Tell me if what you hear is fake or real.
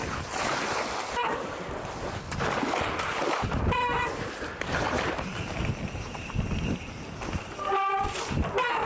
real